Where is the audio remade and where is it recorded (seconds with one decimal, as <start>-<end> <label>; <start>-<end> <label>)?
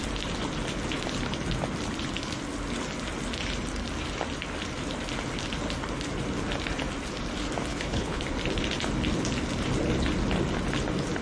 0.0-7.7 recorded; 7.7-8.2 remade; 8.2-11.2 recorded